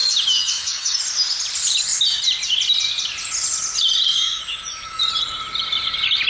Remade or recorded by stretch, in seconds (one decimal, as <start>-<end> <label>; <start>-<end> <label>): 0.0-1.0 remade; 1.0-4.1 recorded; 4.1-5.0 remade; 5.0-6.3 recorded